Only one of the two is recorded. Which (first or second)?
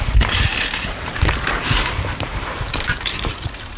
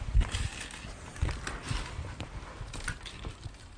second